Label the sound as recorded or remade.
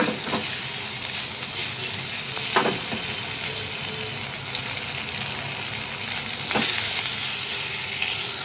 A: recorded